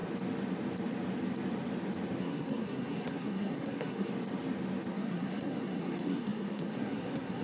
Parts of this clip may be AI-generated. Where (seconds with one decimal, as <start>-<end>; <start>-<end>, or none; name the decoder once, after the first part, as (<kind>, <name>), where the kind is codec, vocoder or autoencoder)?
2.2-4.1 (codec, SNAC); 4.9-7.4